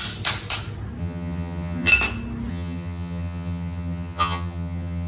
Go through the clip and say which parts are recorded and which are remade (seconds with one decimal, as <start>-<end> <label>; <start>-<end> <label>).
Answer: 0.0-1.0 recorded; 1.0-1.9 remade; 1.9-2.5 recorded; 2.5-5.1 remade